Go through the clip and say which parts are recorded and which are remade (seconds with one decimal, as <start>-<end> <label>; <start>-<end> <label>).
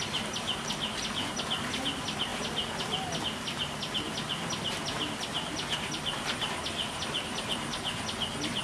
0.0-8.6 recorded